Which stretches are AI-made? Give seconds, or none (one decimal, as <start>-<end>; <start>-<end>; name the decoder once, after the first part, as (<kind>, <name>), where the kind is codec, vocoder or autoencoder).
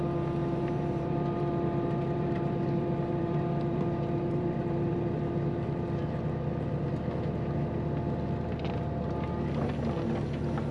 0.4-5.2 (vocoder, BigVGAN v2)